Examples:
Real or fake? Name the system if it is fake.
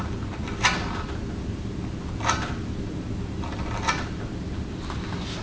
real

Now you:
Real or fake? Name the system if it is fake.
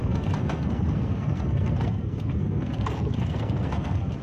fake, codec, SNAC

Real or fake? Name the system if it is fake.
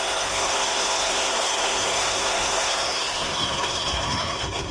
fake, codec, SNAC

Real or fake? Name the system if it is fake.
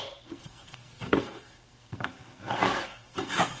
fake, codec, SNAC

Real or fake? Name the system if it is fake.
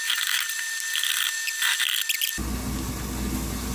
real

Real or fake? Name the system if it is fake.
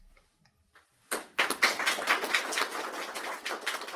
real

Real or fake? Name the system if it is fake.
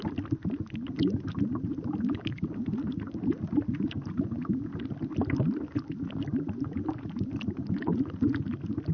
real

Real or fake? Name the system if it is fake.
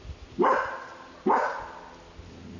real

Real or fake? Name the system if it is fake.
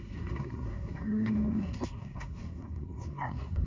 fake, codec, SNAC